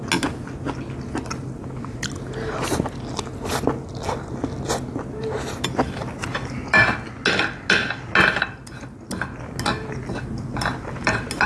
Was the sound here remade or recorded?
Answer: recorded